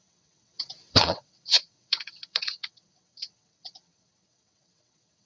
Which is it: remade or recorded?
remade